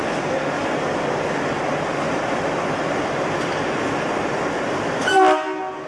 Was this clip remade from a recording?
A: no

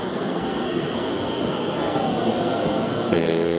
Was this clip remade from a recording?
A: yes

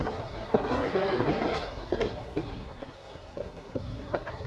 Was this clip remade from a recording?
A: yes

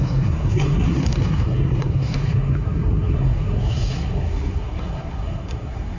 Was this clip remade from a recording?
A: yes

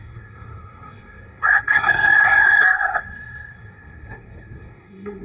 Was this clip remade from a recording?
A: yes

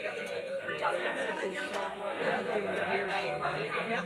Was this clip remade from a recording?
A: yes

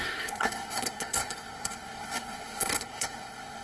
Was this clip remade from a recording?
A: yes